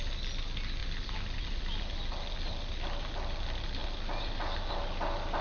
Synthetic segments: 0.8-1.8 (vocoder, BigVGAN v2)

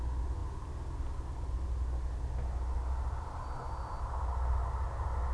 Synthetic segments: none

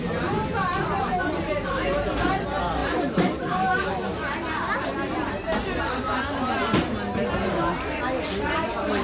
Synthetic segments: none

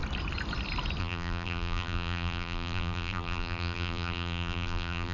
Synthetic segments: 1.0-5.1 (vocoder, BigVGAN v2)

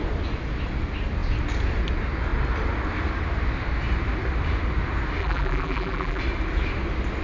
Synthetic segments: 5.2-6.2 (vocoder, BigVGAN v2)

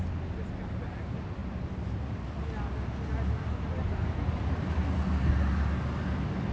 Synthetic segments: none

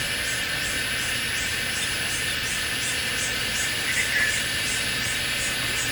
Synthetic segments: 1.5-2.3 (vocoder, BigVGAN v2); 3.3-5.2